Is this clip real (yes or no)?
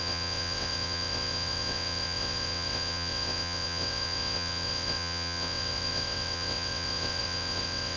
no